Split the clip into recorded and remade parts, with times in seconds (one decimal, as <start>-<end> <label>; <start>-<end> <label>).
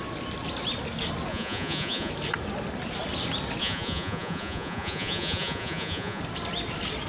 0.0-1.3 recorded; 1.3-2.1 remade; 2.1-3.6 recorded; 3.6-6.2 remade; 6.2-7.1 recorded